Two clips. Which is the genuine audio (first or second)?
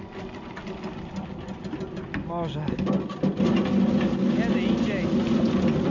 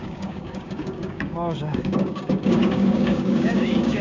first